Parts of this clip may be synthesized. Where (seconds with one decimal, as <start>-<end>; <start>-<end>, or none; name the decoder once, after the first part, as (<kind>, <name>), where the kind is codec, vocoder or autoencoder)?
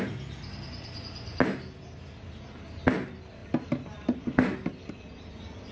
none